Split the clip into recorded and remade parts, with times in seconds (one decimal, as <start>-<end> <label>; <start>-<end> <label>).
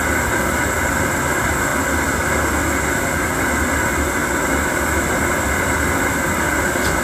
0.0-7.0 recorded